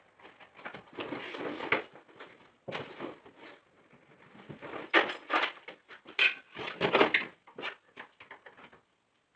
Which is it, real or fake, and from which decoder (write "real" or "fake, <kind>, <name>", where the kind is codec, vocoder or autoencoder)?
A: real